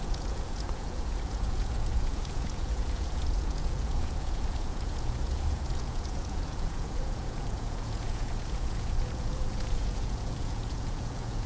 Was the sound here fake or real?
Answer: fake